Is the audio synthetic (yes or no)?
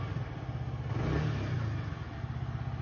no